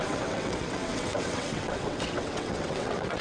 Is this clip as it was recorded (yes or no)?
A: no